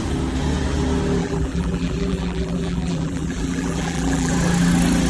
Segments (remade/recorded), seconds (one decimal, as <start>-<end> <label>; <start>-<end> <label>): 0.0-1.2 recorded; 1.2-4.3 remade; 4.3-5.1 recorded

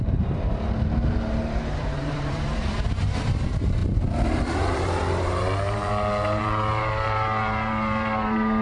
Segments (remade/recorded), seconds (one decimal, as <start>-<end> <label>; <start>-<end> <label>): 0.0-8.6 remade

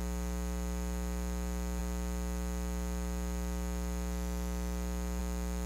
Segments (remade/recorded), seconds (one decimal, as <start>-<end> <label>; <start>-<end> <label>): 0.0-5.7 recorded

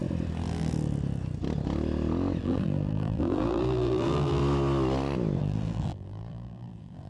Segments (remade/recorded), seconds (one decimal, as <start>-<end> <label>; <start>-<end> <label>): 0.0-2.4 recorded; 2.4-4.4 remade; 4.4-5.4 recorded; 5.4-7.1 remade

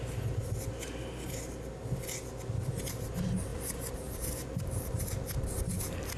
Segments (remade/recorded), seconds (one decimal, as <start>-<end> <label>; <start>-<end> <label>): 0.0-3.5 recorded; 3.5-5.0 remade; 5.0-6.2 recorded

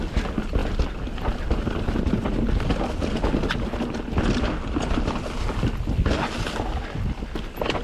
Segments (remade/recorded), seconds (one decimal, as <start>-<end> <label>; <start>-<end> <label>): 0.0-0.6 recorded; 0.6-2.0 remade; 2.0-7.8 recorded